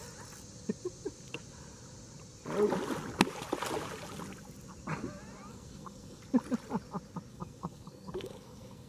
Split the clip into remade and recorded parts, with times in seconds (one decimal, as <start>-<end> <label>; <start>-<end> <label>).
0.0-5.5 recorded; 5.5-6.2 remade; 6.2-7.3 recorded; 7.3-8.9 remade